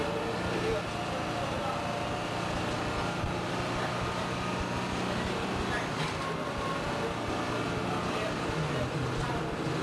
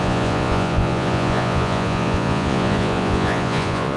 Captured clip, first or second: first